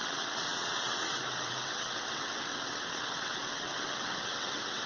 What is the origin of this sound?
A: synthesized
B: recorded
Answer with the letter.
A